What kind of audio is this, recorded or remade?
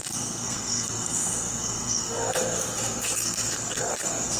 remade